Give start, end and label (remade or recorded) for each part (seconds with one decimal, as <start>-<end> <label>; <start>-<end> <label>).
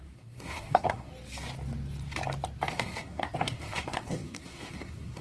0.0-1.1 remade; 1.1-2.7 recorded; 2.7-5.2 remade